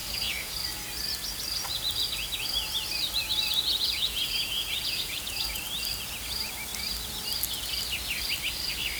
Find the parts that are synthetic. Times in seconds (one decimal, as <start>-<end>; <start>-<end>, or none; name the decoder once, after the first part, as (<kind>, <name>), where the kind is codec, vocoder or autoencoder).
0.0-0.5 (vocoder, Vocos); 3.7-5.6